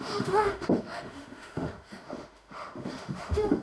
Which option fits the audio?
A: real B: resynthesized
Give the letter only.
B